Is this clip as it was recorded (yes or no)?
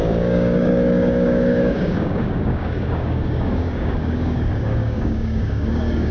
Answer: no